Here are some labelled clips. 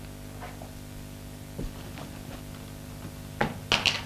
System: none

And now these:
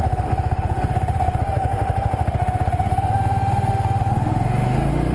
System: autoencoder, DAC-VAE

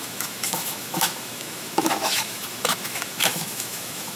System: autoencoder, DAC-VAE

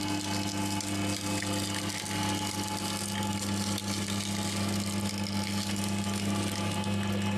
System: none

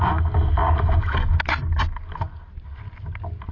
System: none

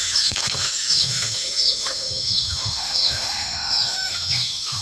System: autoencoder, DAC-VAE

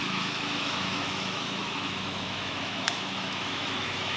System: autoencoder, DAC-VAE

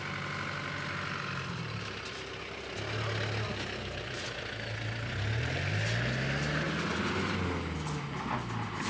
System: none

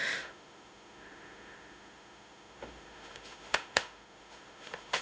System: autoencoder, DAC-VAE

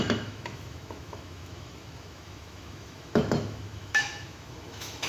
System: autoencoder, DAC-VAE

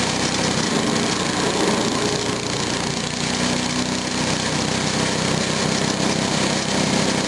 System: none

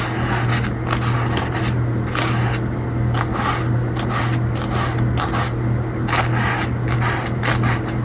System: none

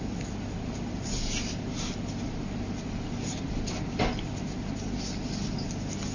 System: none